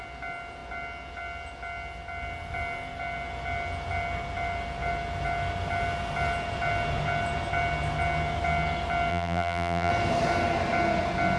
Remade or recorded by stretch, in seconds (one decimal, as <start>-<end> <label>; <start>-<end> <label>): 0.0-9.1 recorded; 9.1-9.9 remade; 9.9-11.4 recorded

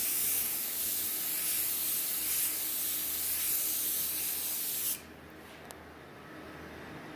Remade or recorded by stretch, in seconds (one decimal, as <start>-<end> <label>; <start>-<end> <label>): 0.0-0.8 remade; 0.8-7.2 recorded

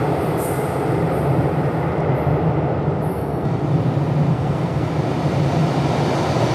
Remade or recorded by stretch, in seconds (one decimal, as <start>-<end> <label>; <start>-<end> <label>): 0.0-3.1 recorded; 3.1-3.6 remade; 3.6-4.3 recorded; 4.3-4.9 remade; 4.9-6.5 recorded

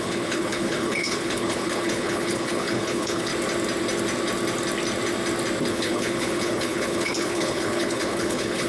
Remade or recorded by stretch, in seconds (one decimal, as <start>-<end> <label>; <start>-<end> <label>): 0.0-3.3 remade; 3.3-5.7 recorded; 5.7-8.7 remade

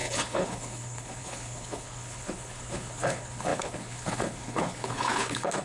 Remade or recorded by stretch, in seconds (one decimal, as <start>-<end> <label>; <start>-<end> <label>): 0.0-5.6 remade